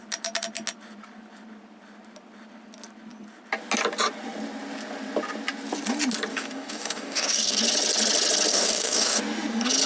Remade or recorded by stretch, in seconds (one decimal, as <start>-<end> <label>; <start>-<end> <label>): 0.0-6.3 recorded; 6.3-7.6 remade; 7.6-8.5 recorded; 8.5-9.2 remade; 9.2-9.9 recorded